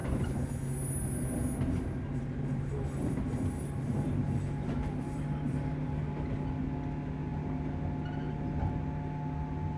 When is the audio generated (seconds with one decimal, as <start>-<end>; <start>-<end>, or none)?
2.1-6.0